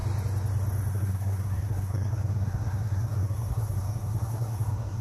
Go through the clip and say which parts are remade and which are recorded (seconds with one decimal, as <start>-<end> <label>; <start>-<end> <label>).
0.0-0.9 recorded; 0.9-5.0 remade